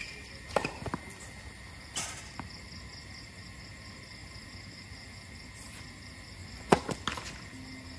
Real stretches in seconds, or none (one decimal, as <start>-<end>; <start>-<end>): 0.0-6.4; 6.9-8.0